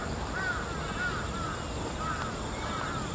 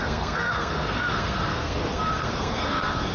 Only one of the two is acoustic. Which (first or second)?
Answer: first